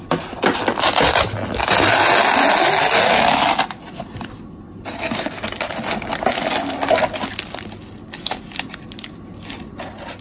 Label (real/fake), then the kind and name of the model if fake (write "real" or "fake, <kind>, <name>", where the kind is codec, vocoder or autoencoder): real